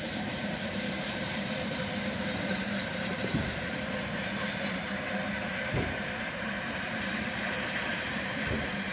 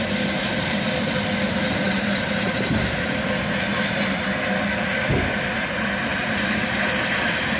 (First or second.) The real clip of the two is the second